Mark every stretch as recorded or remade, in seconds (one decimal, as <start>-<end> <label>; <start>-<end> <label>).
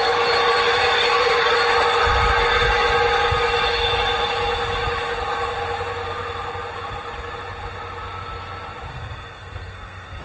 0.0-8.9 recorded; 8.9-10.2 remade